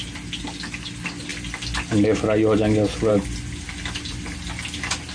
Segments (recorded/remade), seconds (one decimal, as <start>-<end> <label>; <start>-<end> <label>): 0.0-5.1 recorded